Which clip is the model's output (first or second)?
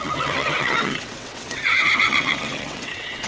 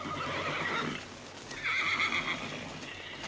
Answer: first